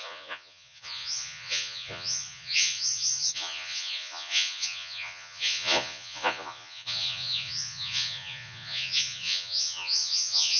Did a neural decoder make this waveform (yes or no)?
yes